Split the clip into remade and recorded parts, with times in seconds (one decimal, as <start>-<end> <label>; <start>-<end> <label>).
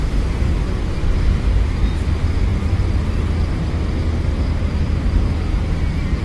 0.0-6.2 recorded